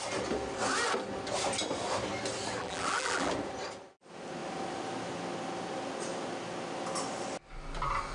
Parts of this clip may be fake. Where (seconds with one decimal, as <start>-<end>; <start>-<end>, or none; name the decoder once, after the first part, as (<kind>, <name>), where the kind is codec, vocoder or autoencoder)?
2.6-3.3 (vocoder, BigVGAN v2)